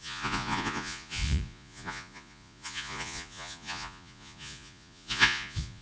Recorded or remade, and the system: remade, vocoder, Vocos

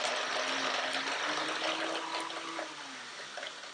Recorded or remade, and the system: recorded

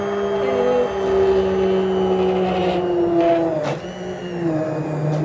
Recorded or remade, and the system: recorded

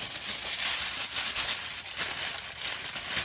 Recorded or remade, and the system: recorded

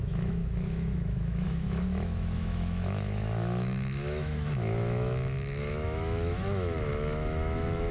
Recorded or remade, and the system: remade, autoencoder, DAC-VAE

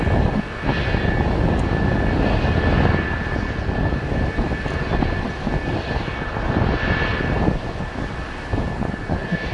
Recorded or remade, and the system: recorded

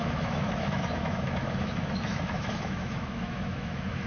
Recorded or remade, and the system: remade, autoencoder, DAC-VAE